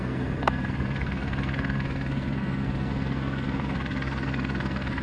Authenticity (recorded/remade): remade